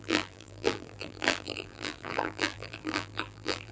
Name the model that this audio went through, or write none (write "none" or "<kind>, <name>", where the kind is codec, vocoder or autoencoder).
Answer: vocoder, BigVGAN v2